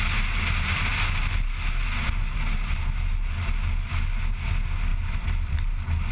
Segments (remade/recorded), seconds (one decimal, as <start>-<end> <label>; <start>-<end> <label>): 0.0-6.1 recorded